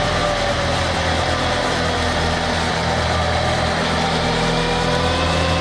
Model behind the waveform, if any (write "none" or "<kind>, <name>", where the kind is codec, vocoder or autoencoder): none